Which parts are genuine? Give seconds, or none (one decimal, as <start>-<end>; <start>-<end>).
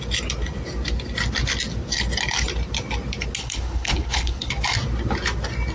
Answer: 0.0-3.4; 4.5-5.7